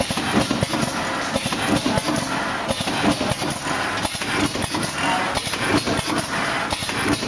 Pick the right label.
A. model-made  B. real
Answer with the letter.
B